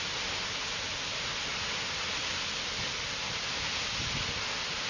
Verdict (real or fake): real